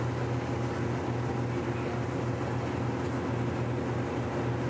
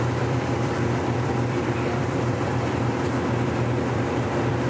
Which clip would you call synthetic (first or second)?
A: second